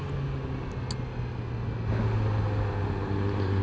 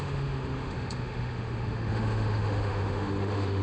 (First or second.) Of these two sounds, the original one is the first